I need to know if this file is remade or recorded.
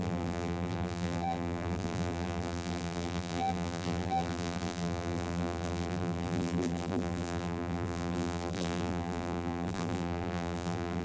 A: remade